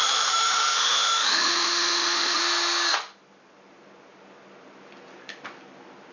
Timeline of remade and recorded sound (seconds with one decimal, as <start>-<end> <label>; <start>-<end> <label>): 0.0-2.4 remade; 2.4-6.1 recorded